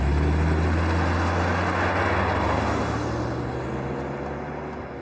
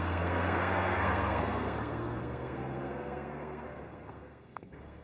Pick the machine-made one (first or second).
second